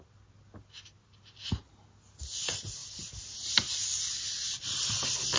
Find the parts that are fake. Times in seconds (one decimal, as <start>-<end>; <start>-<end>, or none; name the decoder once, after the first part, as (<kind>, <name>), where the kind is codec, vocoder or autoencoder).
none